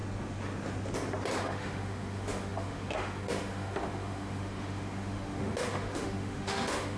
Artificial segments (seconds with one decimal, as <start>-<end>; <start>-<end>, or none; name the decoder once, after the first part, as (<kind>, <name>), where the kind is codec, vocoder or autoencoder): 1.4-7.0 (autoencoder, DAC-VAE)